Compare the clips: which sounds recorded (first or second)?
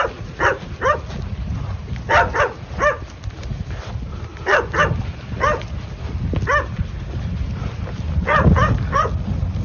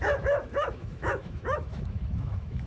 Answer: first